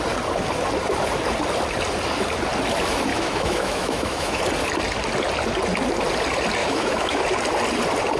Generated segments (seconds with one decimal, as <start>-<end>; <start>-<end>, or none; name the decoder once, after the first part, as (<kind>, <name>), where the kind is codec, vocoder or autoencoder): 3.1-4.4 (autoencoder, DAC-VAE); 6.6-7.2